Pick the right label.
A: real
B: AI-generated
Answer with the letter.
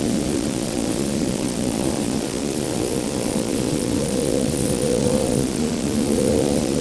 B